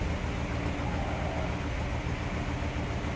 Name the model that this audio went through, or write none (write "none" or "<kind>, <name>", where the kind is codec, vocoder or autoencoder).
none